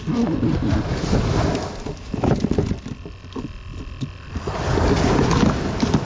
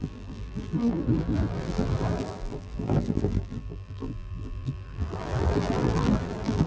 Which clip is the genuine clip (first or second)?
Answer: first